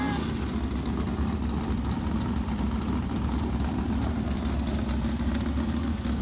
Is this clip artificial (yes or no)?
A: no